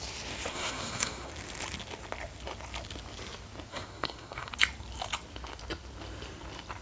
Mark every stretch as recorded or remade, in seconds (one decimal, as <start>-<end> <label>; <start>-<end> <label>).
0.0-0.5 recorded; 0.5-1.3 remade; 1.3-3.7 recorded; 3.7-4.5 remade; 4.5-6.8 recorded